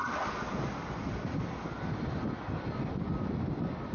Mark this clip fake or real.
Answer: fake